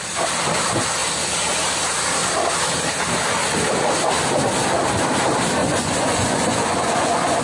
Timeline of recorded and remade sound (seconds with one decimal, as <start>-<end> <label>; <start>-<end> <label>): 0.0-5.6 recorded; 5.6-7.4 remade